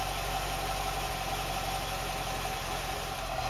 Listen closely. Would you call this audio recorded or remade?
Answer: recorded